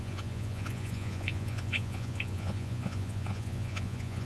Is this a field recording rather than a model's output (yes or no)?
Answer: no